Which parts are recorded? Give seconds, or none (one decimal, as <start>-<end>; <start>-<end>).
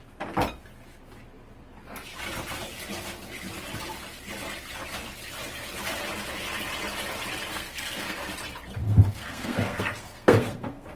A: 0.0-7.5; 8.2-8.8